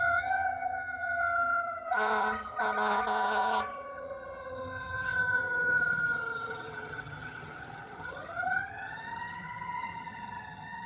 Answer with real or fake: fake